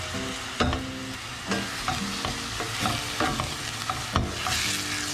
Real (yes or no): yes